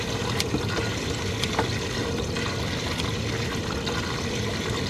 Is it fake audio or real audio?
real